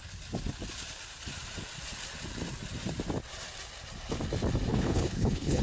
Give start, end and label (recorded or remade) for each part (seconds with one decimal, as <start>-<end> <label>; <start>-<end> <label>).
0.0-4.7 recorded; 4.7-5.6 remade